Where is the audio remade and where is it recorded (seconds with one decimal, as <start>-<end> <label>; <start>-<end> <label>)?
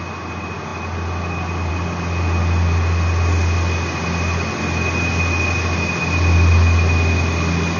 0.0-7.8 recorded